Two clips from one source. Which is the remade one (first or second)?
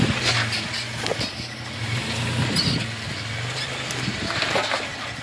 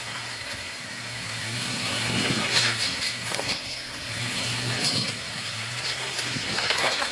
second